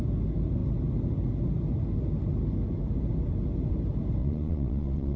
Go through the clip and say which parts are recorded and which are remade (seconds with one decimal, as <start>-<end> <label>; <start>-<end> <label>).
0.0-4.2 recorded; 4.2-5.2 remade